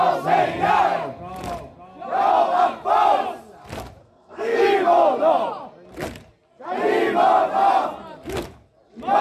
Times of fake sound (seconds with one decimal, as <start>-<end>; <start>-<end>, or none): 4.0-4.6